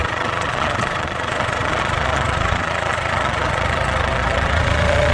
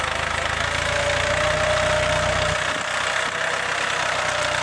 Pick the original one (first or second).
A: second